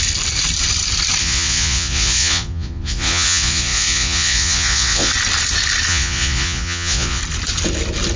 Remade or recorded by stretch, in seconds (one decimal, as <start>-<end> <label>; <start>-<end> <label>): 0.0-1.2 recorded; 1.2-5.1 remade; 5.1-5.9 recorded; 5.9-7.2 remade; 7.2-8.2 recorded